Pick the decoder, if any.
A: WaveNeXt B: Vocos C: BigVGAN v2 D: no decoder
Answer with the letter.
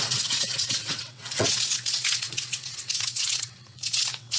A